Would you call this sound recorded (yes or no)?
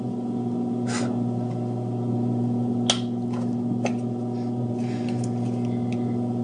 yes